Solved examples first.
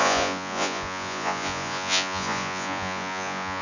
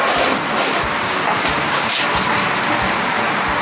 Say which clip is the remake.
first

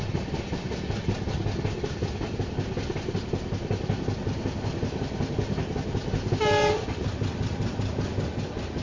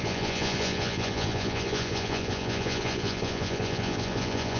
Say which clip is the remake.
second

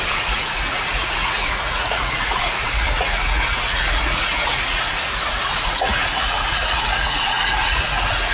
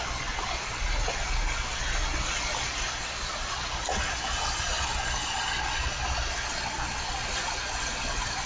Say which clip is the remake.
first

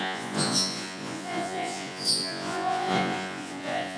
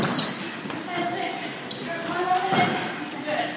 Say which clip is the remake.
first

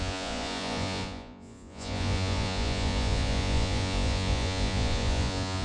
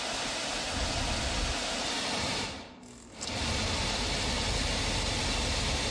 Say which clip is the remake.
first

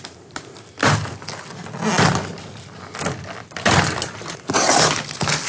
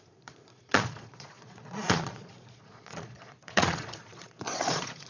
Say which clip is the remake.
second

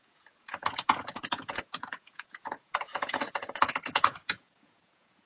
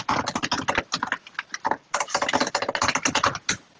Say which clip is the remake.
first